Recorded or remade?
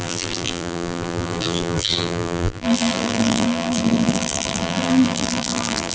remade